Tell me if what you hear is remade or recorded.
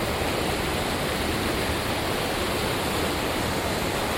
recorded